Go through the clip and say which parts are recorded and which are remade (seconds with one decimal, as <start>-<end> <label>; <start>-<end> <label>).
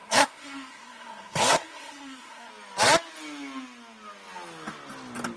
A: 0.0-2.5 remade; 2.5-5.4 recorded